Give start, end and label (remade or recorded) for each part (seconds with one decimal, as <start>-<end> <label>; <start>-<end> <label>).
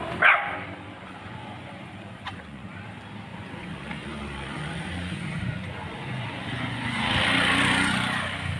0.0-1.0 recorded; 1.0-2.9 remade; 2.9-3.3 recorded; 3.3-7.0 remade; 7.0-8.6 recorded